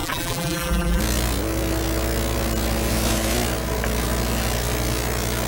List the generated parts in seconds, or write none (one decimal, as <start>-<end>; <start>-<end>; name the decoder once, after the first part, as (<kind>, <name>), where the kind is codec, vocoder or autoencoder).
0.0-1.0 (vocoder, BigVGAN v2)